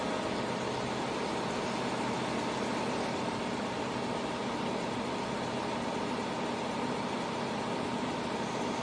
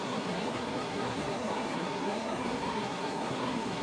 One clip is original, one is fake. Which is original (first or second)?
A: first